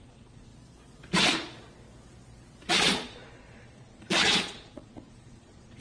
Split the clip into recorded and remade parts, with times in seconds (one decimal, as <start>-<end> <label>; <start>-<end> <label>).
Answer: 0.0-0.5 remade; 0.5-2.7 recorded; 2.7-5.8 remade